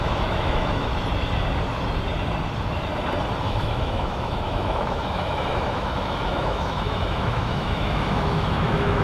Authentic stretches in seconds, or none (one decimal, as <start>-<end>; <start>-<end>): 0.9-3.4